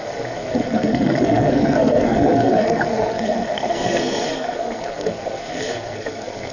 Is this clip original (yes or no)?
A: no